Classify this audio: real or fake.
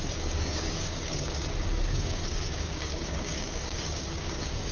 fake